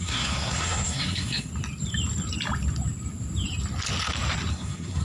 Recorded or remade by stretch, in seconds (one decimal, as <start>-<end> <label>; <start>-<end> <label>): 0.0-1.5 remade; 1.5-4.5 recorded; 4.5-5.0 remade